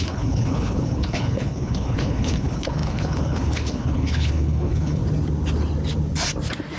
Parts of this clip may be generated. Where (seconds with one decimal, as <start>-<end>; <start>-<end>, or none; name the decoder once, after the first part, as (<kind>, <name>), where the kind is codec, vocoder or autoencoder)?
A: 0.0-5.0 (codec, HILCodec)